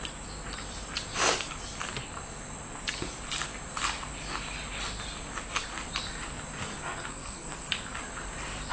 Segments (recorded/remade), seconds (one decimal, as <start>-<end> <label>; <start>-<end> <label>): 0.0-7.1 recorded; 7.1-7.7 remade; 7.7-8.7 recorded

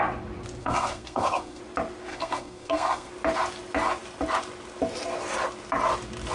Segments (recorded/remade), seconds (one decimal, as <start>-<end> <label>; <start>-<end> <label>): 0.0-0.6 recorded; 0.6-1.6 remade; 1.6-2.1 recorded; 2.1-3.1 remade; 3.1-6.3 recorded

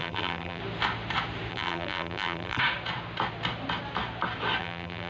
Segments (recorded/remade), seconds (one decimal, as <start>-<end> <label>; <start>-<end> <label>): 0.0-0.6 remade; 0.6-1.5 recorded; 1.5-2.6 remade; 2.6-4.6 recorded; 4.6-5.1 remade

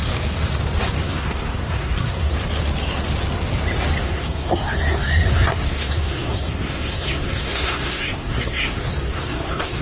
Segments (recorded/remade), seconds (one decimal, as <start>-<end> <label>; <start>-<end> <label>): 0.0-1.0 recorded; 1.0-2.3 remade; 2.3-4.0 recorded; 4.0-9.8 remade